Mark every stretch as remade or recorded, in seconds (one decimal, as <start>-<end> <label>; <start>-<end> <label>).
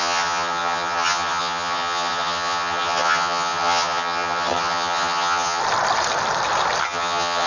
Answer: 0.0-5.6 remade; 5.6-6.8 recorded; 6.8-7.5 remade